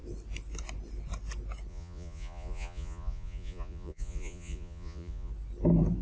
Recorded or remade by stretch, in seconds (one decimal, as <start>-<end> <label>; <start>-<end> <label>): 0.0-1.7 recorded; 1.7-5.3 remade; 5.3-6.0 recorded